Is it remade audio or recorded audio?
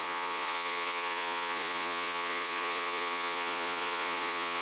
remade